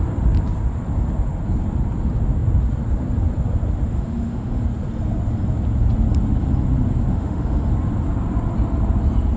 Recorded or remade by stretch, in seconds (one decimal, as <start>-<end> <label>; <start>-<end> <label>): 0.0-3.9 recorded; 3.9-4.6 remade; 4.6-7.1 recorded; 7.1-7.7 remade; 7.7-9.4 recorded